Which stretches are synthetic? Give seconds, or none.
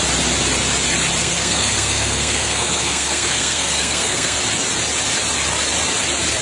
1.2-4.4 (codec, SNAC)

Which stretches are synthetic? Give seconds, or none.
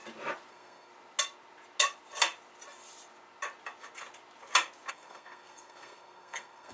0.5-0.9 (codec, SNAC); 4.9-6.7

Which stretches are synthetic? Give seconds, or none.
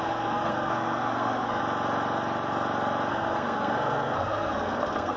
0.0-1.6 (codec, SNAC); 3.1-5.2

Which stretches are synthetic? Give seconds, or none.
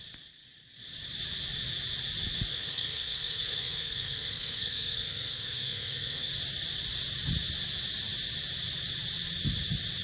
2.5-6.3 (codec, SNAC)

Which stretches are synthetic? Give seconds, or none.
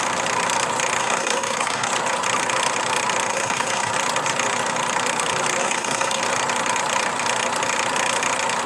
1.0-1.9 (codec, SNAC); 3.3-3.9; 5.6-6.2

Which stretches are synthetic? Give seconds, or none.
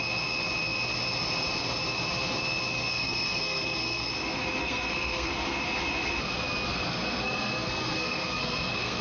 2.9-4.1 (codec, SNAC); 4.6-5.3; 6.7-9.0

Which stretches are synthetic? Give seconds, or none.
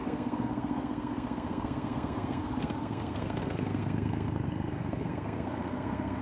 0.0-6.2 (codec, SNAC)